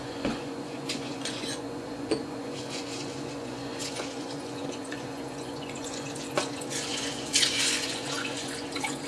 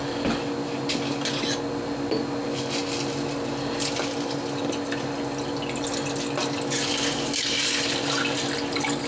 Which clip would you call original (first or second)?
second